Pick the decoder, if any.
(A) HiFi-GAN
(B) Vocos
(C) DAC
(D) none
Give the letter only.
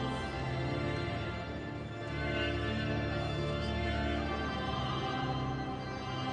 D